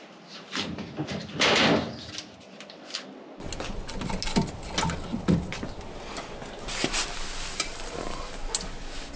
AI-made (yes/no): no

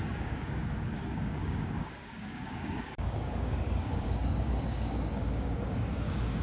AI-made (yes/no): yes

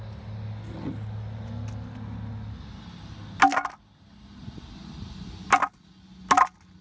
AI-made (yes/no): no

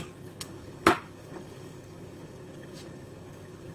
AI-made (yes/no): yes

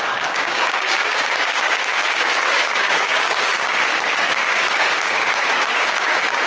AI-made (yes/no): yes